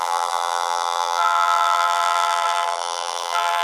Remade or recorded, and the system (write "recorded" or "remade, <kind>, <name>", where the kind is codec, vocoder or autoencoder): remade, vocoder, BigVGAN v2